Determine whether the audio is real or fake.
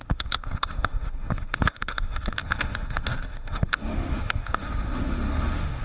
fake